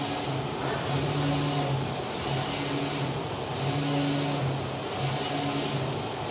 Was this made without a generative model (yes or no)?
yes